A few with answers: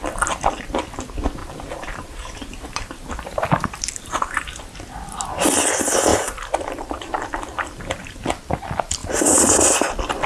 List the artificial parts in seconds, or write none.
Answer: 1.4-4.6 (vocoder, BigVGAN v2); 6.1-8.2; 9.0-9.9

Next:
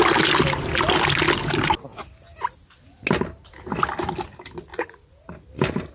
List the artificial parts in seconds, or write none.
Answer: 4.7-5.3 (vocoder, Vocos)

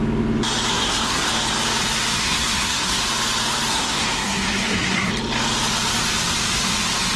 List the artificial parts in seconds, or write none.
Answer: 0.7-1.3 (codec, SNAC); 2.2-3.0; 3.7-5.1